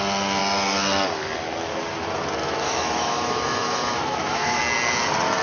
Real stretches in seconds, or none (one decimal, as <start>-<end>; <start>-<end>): 0.0-2.4; 4.6-5.4